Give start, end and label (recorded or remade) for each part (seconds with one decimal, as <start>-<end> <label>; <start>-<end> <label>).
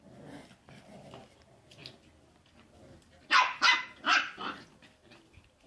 0.0-5.7 recorded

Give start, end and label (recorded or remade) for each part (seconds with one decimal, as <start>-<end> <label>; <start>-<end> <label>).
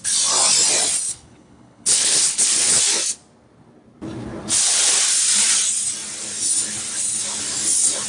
0.0-1.1 recorded; 1.1-2.8 remade; 2.8-8.1 recorded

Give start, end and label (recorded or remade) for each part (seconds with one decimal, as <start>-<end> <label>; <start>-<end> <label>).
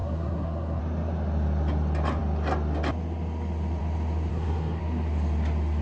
0.0-0.8 remade; 0.8-4.3 recorded; 4.3-4.8 remade; 4.8-5.8 recorded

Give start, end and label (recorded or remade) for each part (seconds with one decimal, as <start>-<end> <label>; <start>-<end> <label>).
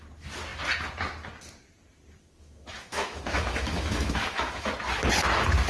0.0-2.2 recorded; 2.2-4.7 remade; 4.7-5.7 recorded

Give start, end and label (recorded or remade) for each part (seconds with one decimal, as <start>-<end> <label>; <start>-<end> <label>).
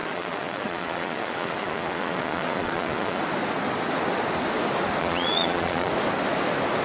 0.0-3.2 remade; 3.2-5.0 recorded; 5.0-5.9 remade; 5.9-6.8 recorded